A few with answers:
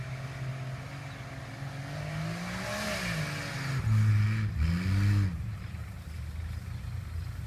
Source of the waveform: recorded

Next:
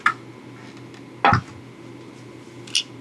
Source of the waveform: recorded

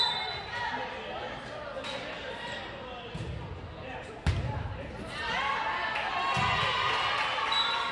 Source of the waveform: recorded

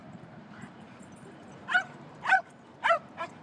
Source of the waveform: remade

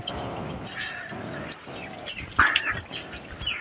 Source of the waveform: recorded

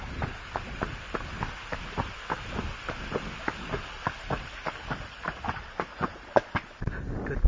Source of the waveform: recorded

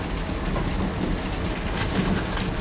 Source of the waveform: recorded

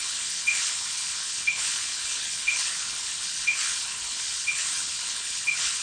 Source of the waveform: remade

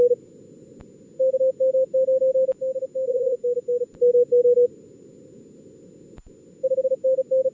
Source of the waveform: recorded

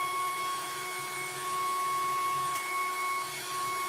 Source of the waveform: remade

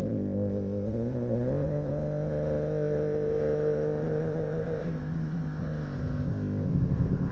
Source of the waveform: remade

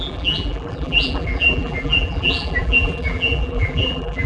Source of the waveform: remade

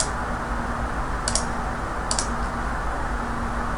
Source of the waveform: recorded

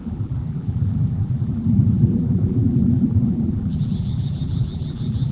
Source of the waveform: remade